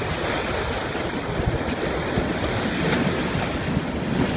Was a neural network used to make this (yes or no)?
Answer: no